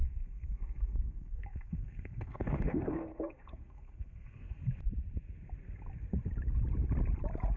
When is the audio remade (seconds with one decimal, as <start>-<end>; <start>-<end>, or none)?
0.0-4.6